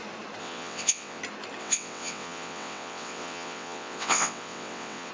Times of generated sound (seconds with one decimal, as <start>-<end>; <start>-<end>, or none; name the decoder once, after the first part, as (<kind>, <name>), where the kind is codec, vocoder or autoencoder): 0.4-1.2 (vocoder, WaveNeXt); 1.6-5.1